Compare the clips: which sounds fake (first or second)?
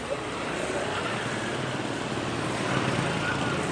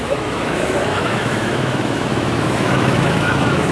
second